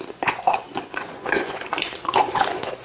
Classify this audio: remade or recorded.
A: remade